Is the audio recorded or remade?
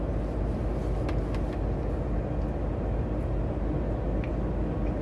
recorded